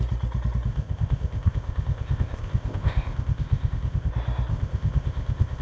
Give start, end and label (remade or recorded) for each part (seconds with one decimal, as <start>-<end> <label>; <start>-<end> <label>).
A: 0.0-0.7 recorded; 0.7-4.1 remade; 4.1-4.5 recorded; 4.5-5.6 remade